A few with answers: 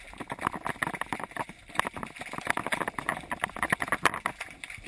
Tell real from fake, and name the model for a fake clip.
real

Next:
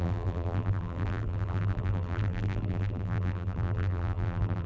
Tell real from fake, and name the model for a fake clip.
fake, vocoder, BigVGAN v2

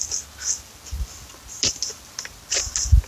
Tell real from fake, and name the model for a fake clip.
real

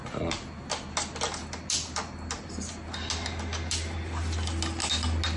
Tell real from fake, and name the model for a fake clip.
real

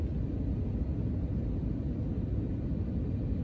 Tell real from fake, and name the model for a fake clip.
real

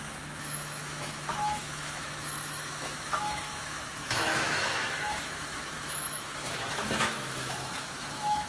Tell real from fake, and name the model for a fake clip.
fake, autoencoder, DAC-VAE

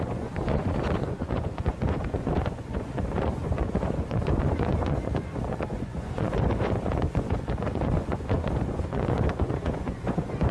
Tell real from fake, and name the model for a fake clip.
fake, vocoder, Vocos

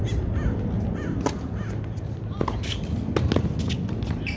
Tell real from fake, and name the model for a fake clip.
real